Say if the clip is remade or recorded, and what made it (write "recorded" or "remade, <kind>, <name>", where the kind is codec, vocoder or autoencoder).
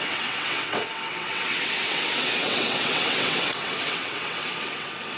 remade, vocoder, WaveNeXt